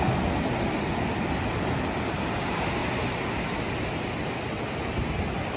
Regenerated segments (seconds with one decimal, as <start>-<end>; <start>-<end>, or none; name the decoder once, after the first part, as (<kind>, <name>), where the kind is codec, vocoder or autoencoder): none